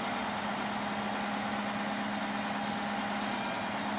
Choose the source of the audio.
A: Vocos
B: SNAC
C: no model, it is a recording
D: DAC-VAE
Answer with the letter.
C